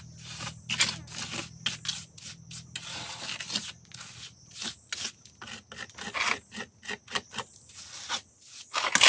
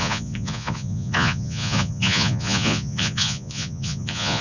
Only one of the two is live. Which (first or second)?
first